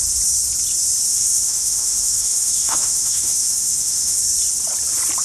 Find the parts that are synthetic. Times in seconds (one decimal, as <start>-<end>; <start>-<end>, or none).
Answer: 1.1-4.2